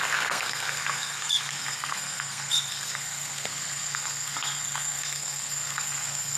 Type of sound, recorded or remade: remade